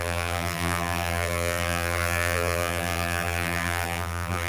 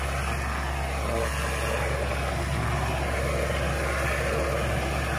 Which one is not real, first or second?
first